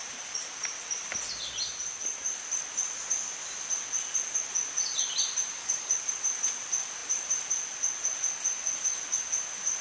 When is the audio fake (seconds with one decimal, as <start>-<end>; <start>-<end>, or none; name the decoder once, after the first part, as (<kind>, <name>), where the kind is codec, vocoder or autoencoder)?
5.6-6.1 (codec, DAC)